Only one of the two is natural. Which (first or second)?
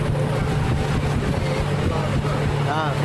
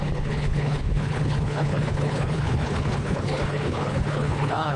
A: first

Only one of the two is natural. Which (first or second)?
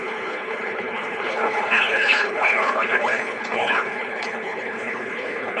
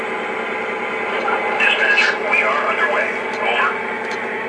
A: second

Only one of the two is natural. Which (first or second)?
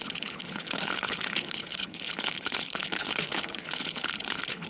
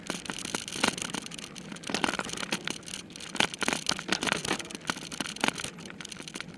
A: second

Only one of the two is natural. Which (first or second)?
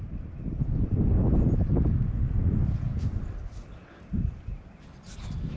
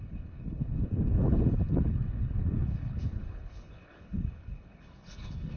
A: first